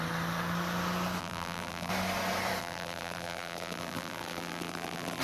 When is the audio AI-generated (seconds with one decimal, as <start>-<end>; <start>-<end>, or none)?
1.2-1.9; 2.6-5.2